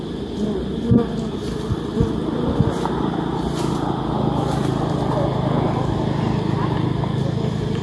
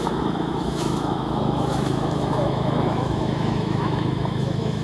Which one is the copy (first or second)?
second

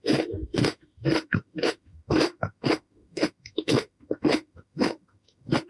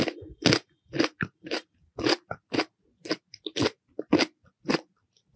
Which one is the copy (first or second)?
first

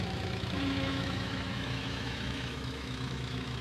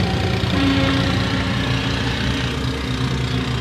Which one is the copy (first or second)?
first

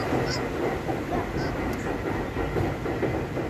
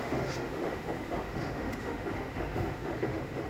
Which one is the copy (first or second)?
second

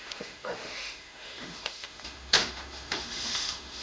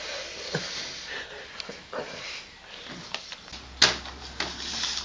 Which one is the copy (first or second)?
first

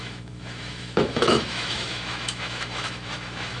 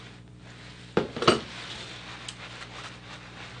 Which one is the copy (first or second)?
first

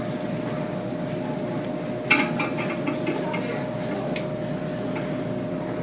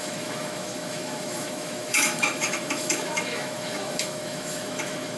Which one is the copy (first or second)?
second